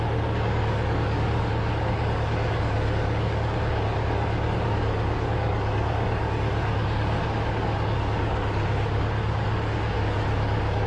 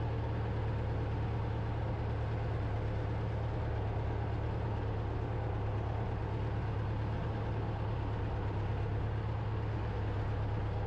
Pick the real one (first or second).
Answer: second